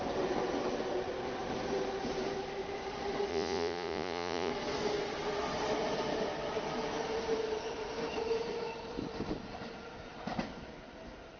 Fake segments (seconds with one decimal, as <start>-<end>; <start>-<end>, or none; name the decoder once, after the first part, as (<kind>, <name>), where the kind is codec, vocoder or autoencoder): 3.3-4.5 (vocoder, Vocos)

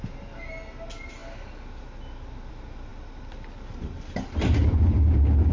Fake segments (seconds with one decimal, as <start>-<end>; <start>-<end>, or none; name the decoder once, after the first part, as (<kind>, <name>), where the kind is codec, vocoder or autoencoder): none

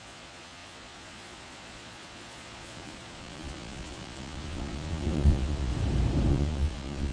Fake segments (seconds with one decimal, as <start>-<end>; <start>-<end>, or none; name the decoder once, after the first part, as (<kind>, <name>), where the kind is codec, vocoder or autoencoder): 0.0-5.7 (vocoder, Vocos); 6.3-7.1